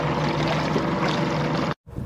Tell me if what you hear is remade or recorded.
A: recorded